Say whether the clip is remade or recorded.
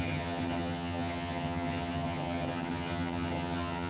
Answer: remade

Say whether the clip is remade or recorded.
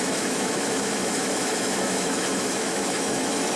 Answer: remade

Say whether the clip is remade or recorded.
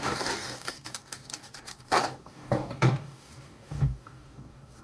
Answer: remade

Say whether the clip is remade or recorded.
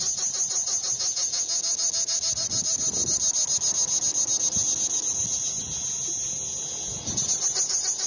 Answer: recorded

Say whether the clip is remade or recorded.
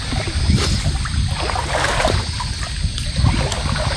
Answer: recorded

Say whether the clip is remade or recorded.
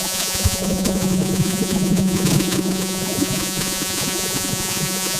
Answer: remade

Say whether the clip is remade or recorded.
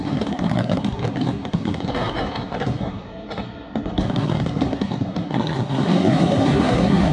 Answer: remade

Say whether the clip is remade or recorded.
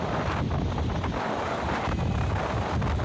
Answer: recorded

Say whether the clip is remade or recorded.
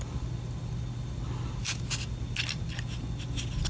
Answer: recorded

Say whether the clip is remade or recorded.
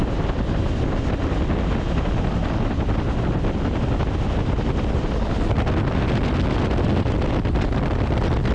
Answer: recorded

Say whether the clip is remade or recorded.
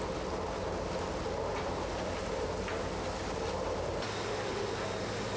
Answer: recorded